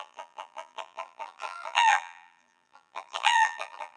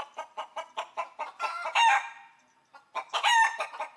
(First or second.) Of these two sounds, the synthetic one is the first